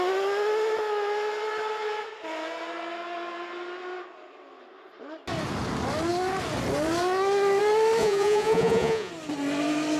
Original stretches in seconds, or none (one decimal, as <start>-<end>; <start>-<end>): 0.0-8.0; 9.1-10.0

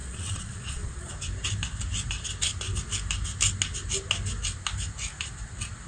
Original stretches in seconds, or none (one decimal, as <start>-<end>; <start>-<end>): 1.1-5.9

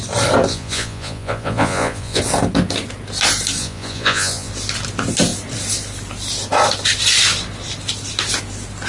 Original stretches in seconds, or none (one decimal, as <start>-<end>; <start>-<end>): 0.0-0.5; 2.2-3.6; 4.5-8.9

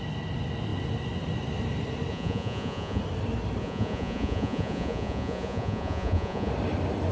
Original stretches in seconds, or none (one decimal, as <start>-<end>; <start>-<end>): 0.0-2.1; 3.0-3.6; 6.5-7.1

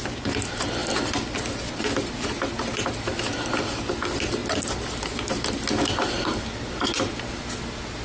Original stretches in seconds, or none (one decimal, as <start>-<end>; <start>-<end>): 0.0-8.0

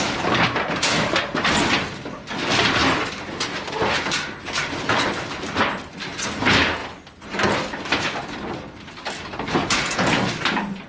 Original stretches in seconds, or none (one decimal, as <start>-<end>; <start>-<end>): 0.0-9.6; 10.2-10.9